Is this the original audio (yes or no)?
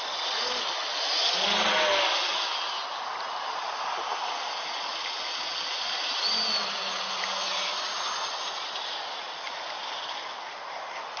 yes